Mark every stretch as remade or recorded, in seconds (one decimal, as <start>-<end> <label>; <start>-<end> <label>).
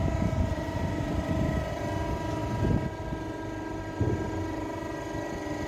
0.0-0.5 recorded; 0.5-1.8 remade; 1.8-5.7 recorded